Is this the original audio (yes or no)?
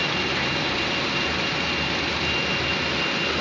yes